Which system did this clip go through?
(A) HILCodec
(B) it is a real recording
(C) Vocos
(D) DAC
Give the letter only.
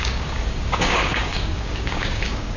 D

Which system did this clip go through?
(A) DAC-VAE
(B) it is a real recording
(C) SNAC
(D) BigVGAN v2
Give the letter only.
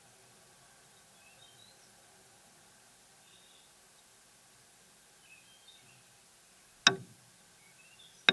B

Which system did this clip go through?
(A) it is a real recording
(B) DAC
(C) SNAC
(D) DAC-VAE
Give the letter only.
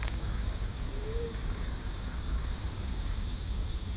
B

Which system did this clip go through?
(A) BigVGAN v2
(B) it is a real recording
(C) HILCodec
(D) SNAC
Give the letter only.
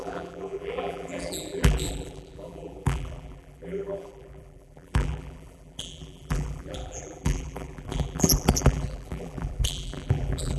A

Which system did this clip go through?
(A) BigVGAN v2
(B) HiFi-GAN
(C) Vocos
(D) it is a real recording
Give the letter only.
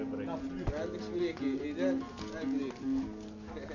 D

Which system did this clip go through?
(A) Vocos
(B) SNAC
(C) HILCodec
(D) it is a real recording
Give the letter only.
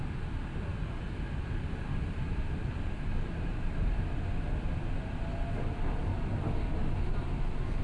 D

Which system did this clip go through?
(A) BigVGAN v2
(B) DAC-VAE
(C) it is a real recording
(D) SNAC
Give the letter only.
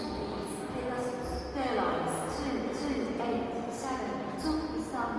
C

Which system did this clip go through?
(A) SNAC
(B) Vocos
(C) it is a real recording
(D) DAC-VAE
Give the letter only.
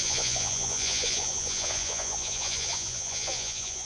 B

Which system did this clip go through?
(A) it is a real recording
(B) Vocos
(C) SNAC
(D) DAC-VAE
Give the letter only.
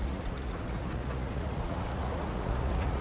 B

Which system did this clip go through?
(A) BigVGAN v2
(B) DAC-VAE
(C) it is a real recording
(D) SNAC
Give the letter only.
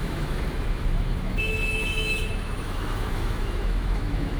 B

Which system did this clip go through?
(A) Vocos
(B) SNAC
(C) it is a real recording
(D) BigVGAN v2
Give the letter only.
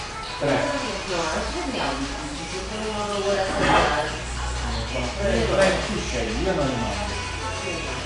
C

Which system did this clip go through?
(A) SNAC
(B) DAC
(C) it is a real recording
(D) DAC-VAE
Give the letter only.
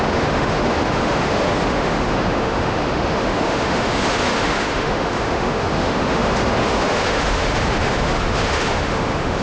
D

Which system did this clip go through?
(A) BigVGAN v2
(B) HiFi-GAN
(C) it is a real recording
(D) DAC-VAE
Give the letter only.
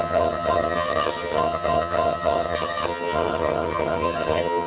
B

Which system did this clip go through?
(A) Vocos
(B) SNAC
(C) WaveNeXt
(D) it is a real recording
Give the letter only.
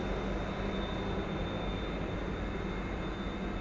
D